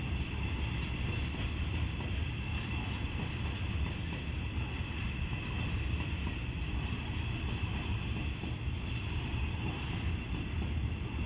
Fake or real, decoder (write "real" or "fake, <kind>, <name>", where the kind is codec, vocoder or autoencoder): real